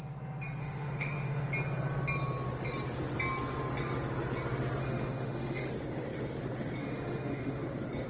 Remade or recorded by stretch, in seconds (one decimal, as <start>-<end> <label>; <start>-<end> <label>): 0.0-0.6 recorded; 0.6-1.5 remade; 1.5-4.8 recorded; 4.8-5.7 remade; 5.7-6.8 recorded; 6.8-7.6 remade; 7.6-8.1 recorded

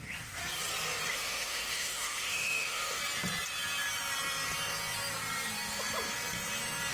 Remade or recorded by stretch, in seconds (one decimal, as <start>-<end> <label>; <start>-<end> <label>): 0.0-0.4 remade; 0.4-1.1 recorded; 1.1-3.0 remade; 3.0-6.9 recorded

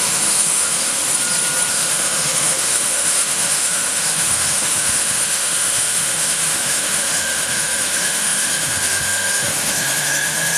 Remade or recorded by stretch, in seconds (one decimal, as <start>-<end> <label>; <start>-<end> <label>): 0.0-1.0 remade; 1.0-1.7 recorded; 1.7-10.6 remade

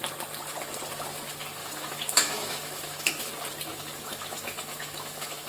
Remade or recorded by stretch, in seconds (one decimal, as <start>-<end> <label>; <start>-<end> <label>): 0.0-1.6 recorded; 1.6-3.3 remade; 3.3-3.7 recorded; 3.7-5.5 remade

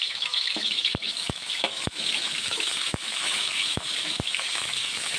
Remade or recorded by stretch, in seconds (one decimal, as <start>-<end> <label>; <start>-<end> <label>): 0.0-5.2 remade

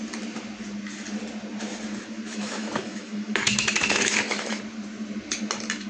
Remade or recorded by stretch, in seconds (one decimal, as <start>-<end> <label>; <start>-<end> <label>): 0.0-2.3 recorded; 2.3-4.6 remade; 4.6-5.9 recorded

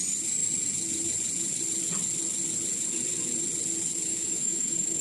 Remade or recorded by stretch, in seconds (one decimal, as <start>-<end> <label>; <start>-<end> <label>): 0.0-4.1 recorded; 4.1-5.0 remade

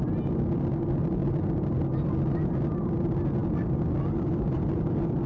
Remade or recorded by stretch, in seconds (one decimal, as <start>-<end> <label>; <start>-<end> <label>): 0.0-5.3 recorded